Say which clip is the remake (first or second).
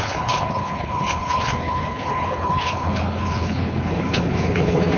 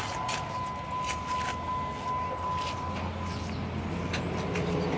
first